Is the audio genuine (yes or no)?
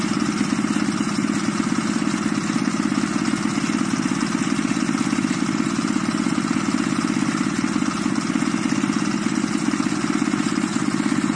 yes